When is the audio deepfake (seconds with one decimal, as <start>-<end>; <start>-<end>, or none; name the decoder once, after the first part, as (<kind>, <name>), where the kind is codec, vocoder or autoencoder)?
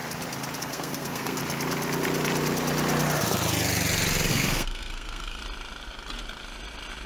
0.6-1.4 (codec, SNAC); 4.3-5.4